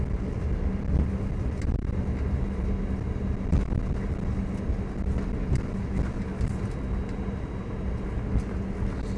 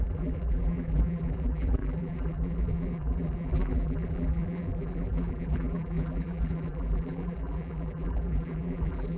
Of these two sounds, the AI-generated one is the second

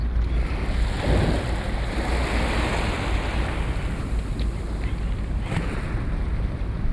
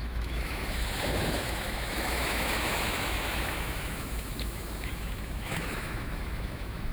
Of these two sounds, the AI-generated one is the second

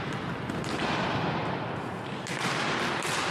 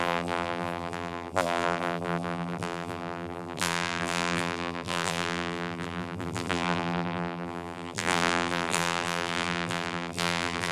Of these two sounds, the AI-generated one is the second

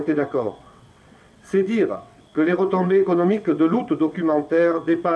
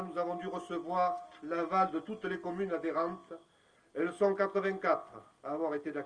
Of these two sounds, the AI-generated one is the first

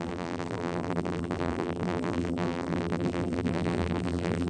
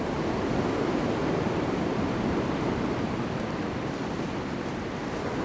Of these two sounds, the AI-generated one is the first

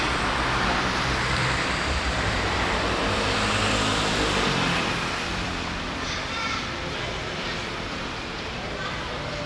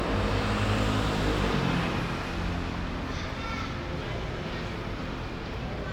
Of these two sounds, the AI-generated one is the first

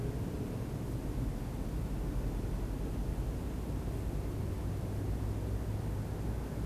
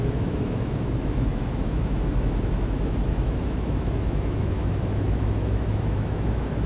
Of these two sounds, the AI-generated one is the second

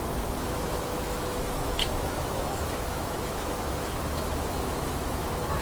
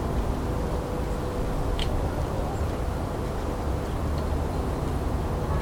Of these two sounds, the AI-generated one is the first